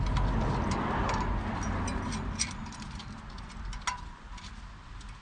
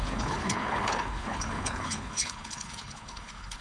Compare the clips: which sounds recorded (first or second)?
first